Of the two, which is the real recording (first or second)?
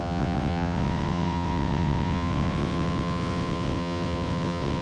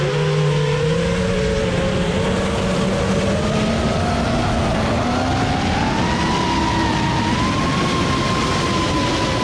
second